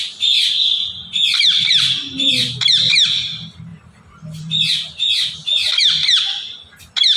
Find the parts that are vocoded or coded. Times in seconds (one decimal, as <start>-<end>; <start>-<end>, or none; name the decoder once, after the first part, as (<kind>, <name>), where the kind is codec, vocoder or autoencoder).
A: 1.0-2.9 (vocoder, BigVGAN v2); 3.7-6.8